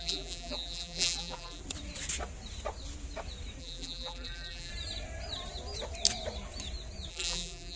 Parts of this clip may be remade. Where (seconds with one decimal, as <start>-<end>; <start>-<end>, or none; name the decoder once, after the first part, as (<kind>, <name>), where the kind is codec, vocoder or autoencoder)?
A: 0.0-1.6 (vocoder, BigVGAN v2); 3.6-4.7; 7.1-7.8

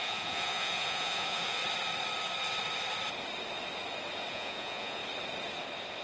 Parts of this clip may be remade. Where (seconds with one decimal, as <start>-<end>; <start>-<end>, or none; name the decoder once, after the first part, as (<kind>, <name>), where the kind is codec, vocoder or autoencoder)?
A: 0.0-1.6 (vocoder, Vocos); 4.3-5.0

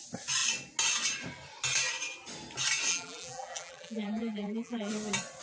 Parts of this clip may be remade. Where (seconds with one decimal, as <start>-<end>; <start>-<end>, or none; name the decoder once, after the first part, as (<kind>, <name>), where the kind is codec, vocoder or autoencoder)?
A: 2.9-4.9 (vocoder, BigVGAN v2)

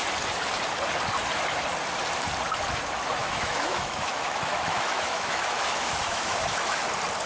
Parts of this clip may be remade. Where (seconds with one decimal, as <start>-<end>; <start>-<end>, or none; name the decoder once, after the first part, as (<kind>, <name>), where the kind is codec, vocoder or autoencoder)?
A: 3.2-6.8 (autoencoder, DAC-VAE)